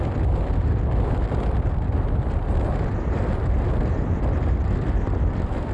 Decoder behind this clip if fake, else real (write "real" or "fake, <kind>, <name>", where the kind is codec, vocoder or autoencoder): real